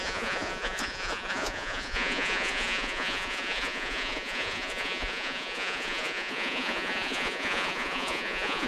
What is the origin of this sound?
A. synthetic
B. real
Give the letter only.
A